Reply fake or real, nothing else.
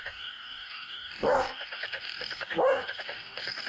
fake